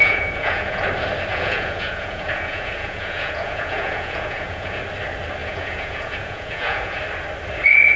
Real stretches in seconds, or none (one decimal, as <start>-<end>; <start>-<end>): 0.8-1.3; 4.8-5.4; 7.0-8.0